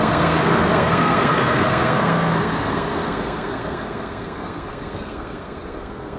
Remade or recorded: remade